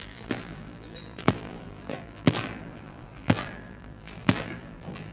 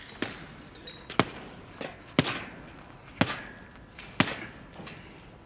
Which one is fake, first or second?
first